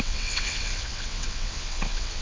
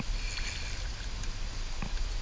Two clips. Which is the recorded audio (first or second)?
second